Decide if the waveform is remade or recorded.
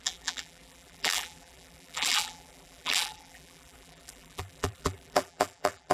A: remade